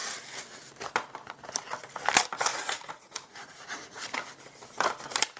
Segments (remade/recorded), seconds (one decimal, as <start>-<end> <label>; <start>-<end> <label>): 0.0-2.5 recorded; 2.5-4.0 remade; 4.0-5.4 recorded